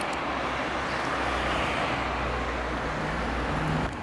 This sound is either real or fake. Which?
real